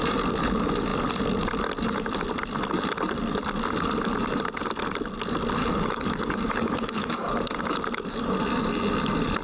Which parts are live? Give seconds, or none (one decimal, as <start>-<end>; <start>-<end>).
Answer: 0.0-5.6; 7.3-9.4